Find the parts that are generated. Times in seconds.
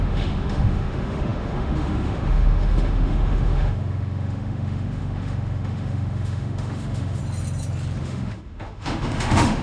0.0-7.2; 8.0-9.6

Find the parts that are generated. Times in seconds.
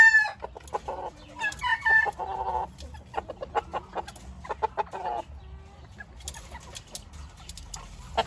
none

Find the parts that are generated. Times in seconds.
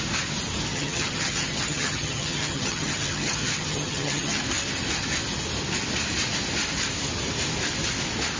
0.7-4.4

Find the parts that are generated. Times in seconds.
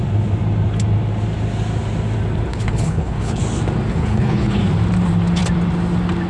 2.5-3.4; 3.9-4.6